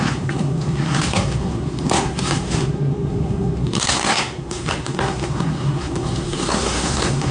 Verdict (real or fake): fake